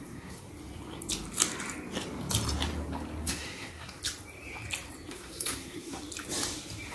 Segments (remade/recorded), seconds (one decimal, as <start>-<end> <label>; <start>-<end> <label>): 0.0-0.5 remade; 0.5-3.2 recorded; 3.2-4.0 remade; 4.0-5.1 recorded; 5.1-6.0 remade; 6.0-6.9 recorded